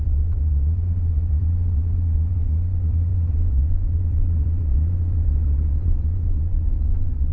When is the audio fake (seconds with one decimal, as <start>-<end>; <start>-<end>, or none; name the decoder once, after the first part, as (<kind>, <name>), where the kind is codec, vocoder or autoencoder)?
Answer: 0.0-7.3 (vocoder, Vocos)